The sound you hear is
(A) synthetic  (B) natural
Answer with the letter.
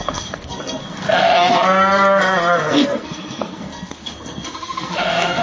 A